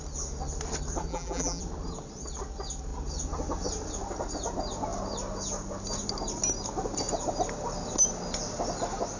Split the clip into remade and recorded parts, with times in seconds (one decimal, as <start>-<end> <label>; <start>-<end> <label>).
0.0-1.1 recorded; 1.1-1.6 remade; 1.6-9.2 recorded